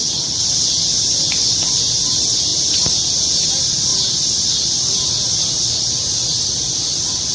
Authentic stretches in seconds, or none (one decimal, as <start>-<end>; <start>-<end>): 0.0-7.3